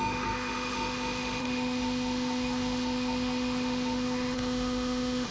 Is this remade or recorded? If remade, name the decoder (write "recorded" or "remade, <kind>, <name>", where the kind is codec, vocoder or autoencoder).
remade, autoencoder, DAC-VAE